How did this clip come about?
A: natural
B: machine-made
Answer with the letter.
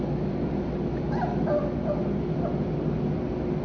A